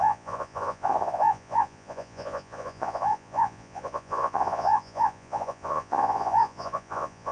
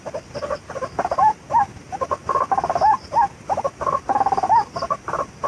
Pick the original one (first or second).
second